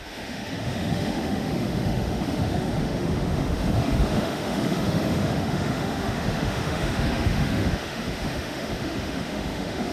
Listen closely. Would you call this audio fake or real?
fake